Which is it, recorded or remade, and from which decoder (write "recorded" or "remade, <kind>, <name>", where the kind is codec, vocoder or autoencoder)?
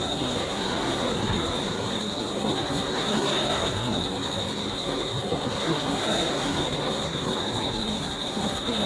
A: remade, codec, SNAC